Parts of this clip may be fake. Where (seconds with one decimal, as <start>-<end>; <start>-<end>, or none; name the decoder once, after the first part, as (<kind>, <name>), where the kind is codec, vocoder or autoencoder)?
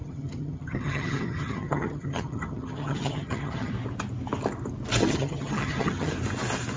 0.0-3.7 (vocoder, HiFi-GAN); 5.0-6.1